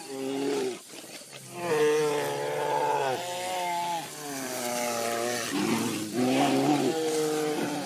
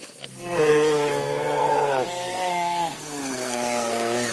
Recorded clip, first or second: first